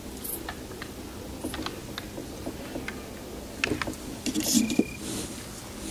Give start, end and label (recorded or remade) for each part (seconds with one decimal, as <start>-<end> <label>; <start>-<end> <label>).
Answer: 0.0-5.9 recorded